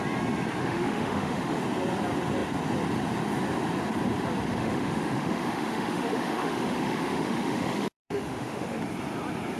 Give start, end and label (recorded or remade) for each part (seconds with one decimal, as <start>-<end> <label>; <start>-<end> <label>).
0.0-0.6 recorded; 0.6-1.6 remade; 1.6-4.5 recorded; 4.5-8.8 remade; 8.8-9.6 recorded